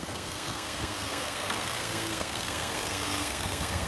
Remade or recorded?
remade